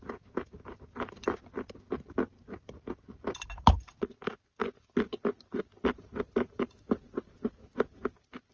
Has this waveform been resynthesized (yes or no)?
no